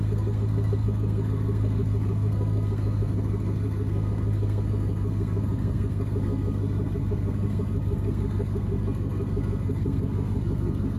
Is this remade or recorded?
remade